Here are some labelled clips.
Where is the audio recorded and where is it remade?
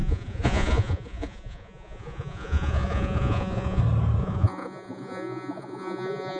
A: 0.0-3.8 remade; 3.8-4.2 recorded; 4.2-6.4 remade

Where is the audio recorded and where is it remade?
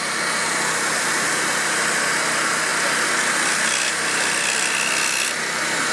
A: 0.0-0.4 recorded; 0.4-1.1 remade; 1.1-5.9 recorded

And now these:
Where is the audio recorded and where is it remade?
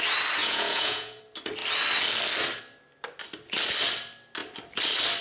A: 0.0-0.4 recorded; 0.4-1.2 remade; 1.2-5.2 recorded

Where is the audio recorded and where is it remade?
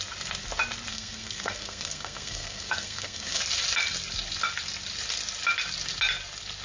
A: 0.0-0.9 recorded; 0.9-3.4 remade; 3.4-6.6 recorded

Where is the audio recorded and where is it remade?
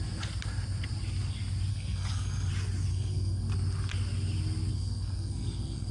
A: 0.0-1.7 recorded; 1.7-2.5 remade; 2.5-2.9 recorded; 2.9-3.5 remade; 3.5-4.7 recorded; 4.7-5.9 remade